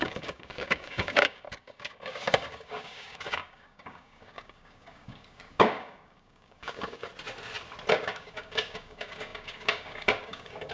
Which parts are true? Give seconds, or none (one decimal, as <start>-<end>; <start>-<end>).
7.1-7.9